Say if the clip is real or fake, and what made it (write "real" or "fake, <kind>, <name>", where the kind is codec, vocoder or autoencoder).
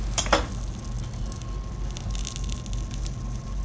real